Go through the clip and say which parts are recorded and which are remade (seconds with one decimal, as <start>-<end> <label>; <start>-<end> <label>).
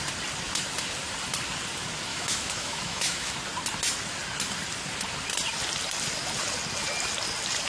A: 0.0-2.1 recorded; 2.1-3.3 remade; 3.3-7.7 recorded